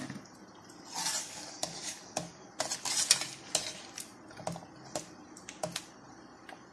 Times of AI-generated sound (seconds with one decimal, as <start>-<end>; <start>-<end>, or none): 1.2-2.5